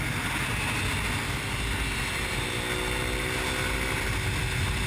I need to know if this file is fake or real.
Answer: real